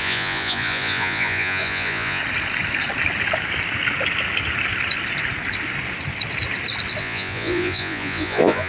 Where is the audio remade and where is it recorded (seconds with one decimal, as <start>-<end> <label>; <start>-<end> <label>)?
0.0-2.2 remade; 2.2-7.0 recorded; 7.0-8.7 remade